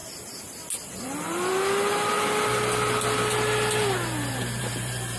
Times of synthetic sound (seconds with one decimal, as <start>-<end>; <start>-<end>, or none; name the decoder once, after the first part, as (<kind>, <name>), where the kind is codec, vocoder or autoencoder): 1.0-1.5 (vocoder, BigVGAN v2); 4.6-5.2